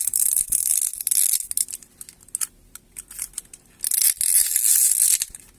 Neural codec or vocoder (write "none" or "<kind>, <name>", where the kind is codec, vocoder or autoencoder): none